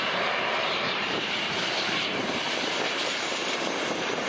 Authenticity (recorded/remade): remade